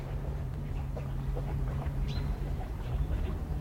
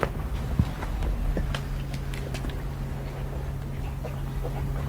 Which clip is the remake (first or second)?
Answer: first